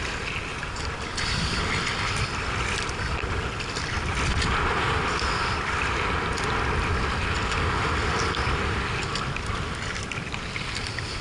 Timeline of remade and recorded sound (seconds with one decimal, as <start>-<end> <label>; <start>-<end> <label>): 0.0-0.5 recorded; 0.5-1.7 remade; 1.7-11.2 recorded